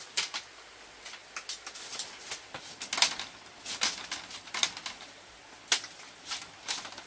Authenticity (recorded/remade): recorded